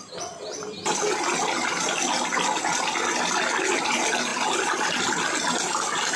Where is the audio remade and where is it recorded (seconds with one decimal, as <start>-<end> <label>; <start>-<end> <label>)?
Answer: 0.0-6.2 recorded